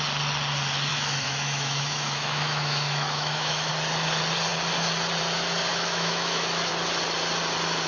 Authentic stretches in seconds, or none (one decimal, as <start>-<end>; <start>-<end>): 0.0-0.9; 3.7-5.7; 6.7-7.9